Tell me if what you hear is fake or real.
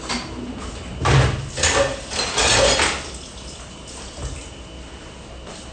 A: real